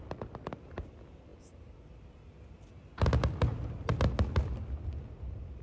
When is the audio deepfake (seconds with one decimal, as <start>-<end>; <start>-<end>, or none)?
none